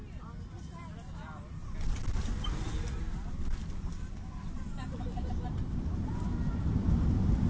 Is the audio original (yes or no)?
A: yes